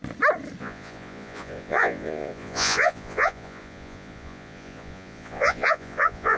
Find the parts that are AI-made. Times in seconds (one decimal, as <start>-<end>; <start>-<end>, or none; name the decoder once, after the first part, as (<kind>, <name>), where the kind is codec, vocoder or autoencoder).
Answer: 0.6-6.4 (vocoder, Vocos)